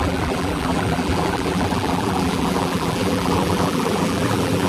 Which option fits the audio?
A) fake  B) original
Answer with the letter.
A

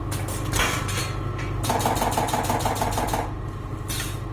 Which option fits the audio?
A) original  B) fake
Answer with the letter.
A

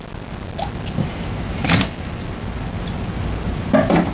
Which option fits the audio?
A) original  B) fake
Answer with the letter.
A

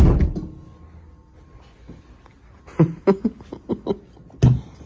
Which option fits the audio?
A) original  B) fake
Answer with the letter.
A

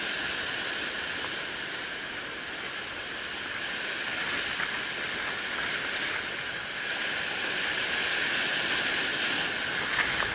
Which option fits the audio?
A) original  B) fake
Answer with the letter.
A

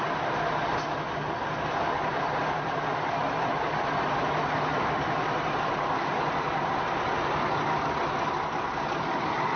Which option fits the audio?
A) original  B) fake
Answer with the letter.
A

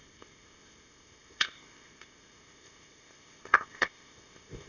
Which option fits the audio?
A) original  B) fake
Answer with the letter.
B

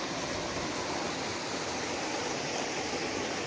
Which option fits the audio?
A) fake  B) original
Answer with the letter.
B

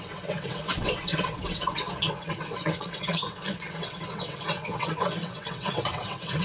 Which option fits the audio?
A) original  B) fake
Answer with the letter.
B